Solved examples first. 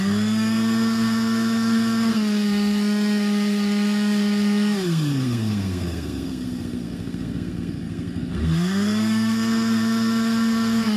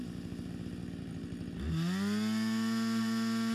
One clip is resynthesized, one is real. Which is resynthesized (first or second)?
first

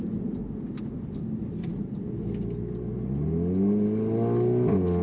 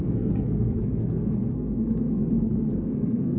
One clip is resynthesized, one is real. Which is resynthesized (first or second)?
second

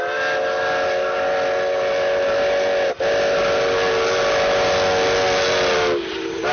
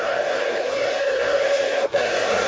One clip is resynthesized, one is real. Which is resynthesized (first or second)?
second